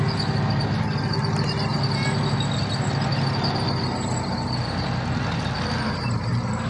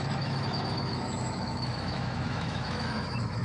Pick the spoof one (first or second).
second